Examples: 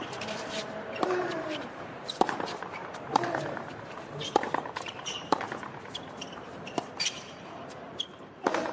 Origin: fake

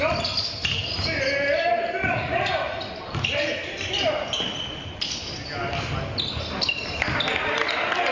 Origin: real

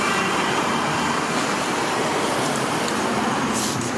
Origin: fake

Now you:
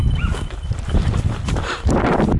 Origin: real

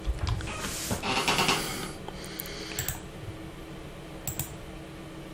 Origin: real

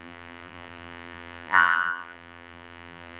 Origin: fake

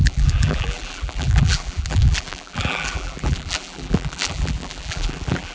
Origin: fake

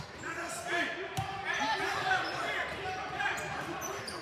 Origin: fake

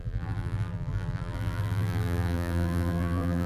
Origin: fake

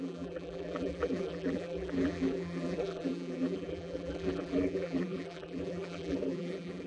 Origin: fake